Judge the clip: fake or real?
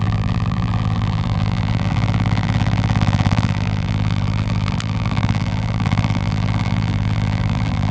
fake